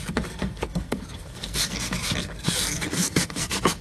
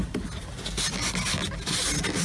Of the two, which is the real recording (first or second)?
second